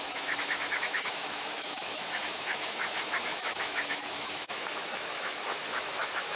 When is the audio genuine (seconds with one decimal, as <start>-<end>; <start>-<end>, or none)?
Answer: none